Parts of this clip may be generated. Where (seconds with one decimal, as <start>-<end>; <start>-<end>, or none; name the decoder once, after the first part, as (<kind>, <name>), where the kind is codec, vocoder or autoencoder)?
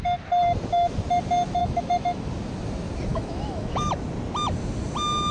1.6-2.3 (autoencoder, DAC-VAE); 3.1-3.9